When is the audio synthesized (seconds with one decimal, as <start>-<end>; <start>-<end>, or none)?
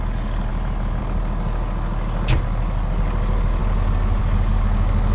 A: 0.0-0.5; 1.0-3.6; 4.2-5.1